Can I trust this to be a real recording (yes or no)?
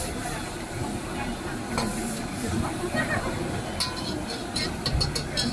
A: yes